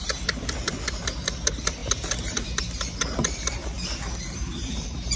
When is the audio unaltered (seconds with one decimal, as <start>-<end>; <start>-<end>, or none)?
0.0-1.8; 2.6-3.6